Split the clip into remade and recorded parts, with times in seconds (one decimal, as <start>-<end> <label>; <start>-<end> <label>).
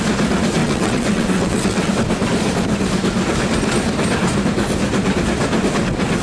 0.0-0.6 recorded; 0.6-1.9 remade; 1.9-6.2 recorded